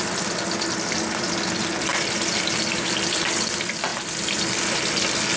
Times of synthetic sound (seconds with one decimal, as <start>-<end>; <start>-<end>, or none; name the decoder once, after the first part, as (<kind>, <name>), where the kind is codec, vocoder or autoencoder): 1.9-3.3 (vocoder, BigVGAN v2)